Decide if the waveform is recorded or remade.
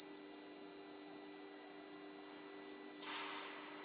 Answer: recorded